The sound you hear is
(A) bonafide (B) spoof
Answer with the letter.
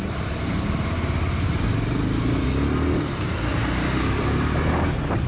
A